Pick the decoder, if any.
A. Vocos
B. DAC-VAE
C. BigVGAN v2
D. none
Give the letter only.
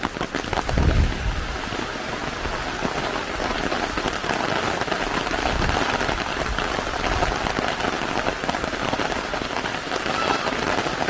D